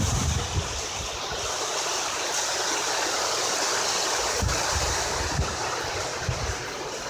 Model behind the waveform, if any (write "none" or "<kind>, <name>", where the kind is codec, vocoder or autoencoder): none